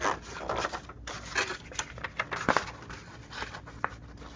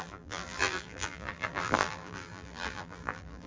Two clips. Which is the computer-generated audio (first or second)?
second